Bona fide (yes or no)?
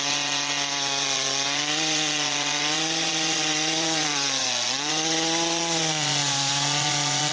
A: no